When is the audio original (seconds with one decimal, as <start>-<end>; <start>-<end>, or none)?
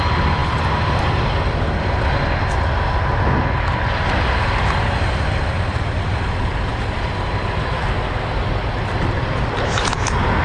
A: 0.0-10.4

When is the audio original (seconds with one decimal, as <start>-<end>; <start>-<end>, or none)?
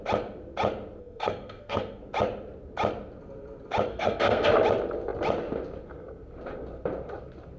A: 0.0-1.0; 2.0-3.9; 4.5-7.6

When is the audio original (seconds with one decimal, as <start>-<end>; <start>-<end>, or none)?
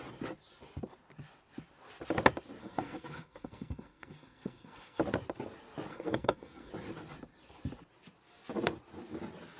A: 0.0-2.6; 5.0-5.9; 6.7-9.6